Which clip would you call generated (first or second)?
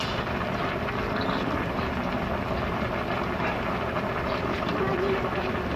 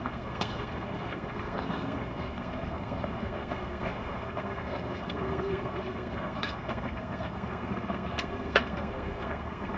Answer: second